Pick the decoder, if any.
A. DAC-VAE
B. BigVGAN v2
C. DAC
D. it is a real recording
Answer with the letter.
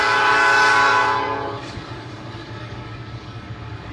C